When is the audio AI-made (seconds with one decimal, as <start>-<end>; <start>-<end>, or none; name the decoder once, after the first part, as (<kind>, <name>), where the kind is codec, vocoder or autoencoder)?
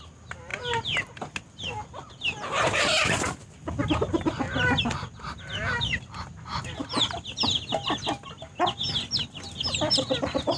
none